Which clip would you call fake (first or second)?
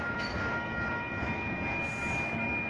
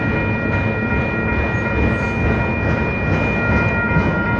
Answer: first